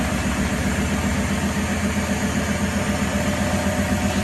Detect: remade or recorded recorded